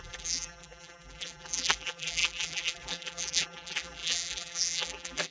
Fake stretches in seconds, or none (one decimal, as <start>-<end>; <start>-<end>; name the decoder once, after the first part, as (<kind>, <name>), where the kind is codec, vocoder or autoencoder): 0.0-5.3 (vocoder, BigVGAN v2)